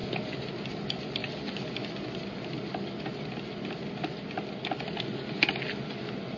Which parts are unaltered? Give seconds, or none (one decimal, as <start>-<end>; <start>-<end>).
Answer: 0.0-6.4